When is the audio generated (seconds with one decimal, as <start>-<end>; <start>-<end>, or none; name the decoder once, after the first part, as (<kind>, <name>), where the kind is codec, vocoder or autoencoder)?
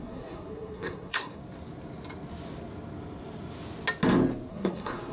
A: 0.0-1.4 (codec, SNAC); 4.5-5.1